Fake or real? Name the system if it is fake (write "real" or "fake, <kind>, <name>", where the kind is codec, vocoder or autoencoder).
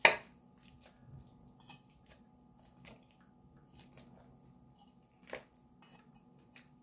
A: real